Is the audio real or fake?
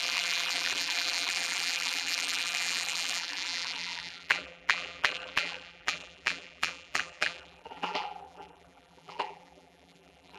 fake